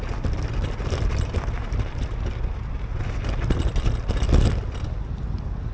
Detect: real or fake real